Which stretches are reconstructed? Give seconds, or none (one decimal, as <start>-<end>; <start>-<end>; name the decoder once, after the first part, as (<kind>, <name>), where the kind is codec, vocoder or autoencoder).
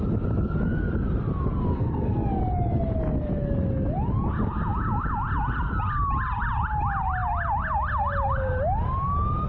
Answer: 1.7-2.4 (codec, SNAC)